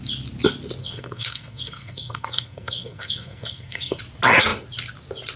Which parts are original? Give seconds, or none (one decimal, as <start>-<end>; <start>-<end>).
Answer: 0.0-0.8; 4.0-5.4